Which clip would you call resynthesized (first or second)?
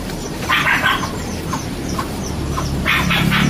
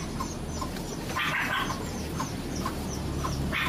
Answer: first